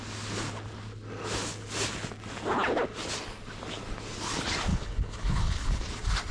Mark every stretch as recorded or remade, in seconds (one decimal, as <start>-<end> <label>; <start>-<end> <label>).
0.0-4.7 recorded; 4.7-5.8 remade; 5.8-6.3 recorded